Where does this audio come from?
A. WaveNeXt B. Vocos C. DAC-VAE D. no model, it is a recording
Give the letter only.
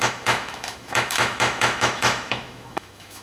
C